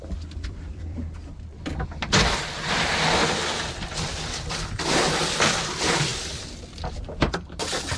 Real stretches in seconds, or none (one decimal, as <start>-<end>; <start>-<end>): 1.7-2.7; 3.2-3.9; 6.1-7.2